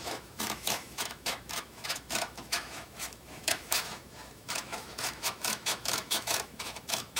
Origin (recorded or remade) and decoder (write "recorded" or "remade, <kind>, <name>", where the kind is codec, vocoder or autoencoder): remade, autoencoder, DAC-VAE